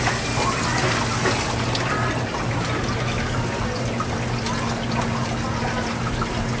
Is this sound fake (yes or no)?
no